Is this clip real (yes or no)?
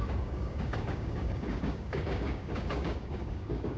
no